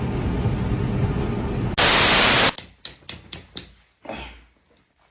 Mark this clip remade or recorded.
recorded